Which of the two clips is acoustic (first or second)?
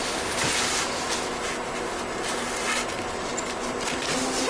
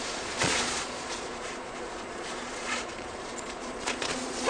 first